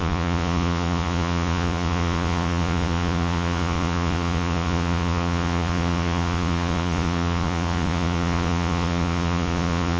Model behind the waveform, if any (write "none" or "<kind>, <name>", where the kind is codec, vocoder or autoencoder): vocoder, Vocos